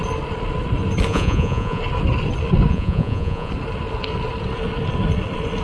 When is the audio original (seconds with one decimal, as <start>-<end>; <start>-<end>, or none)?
0.0-1.1; 1.8-2.7; 3.5-5.6